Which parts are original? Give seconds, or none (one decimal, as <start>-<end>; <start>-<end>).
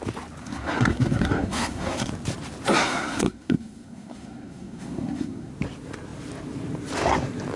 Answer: 0.0-0.4; 2.1-2.7; 5.5-7.6